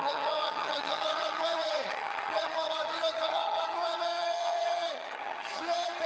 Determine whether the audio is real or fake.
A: fake